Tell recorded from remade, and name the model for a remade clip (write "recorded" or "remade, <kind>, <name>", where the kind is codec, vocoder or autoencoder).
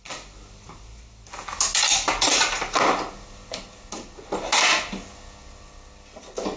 recorded